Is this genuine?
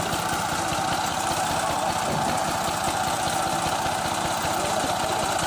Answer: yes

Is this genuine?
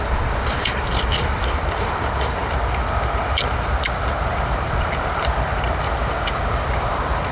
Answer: no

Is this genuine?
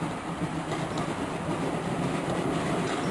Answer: no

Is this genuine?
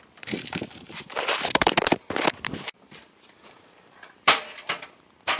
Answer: no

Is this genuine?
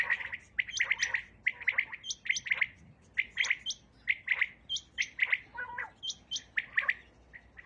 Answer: yes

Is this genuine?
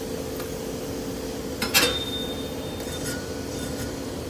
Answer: yes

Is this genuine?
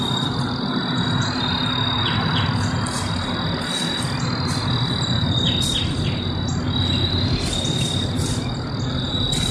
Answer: yes